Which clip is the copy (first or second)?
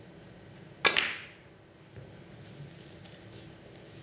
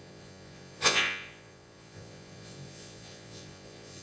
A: second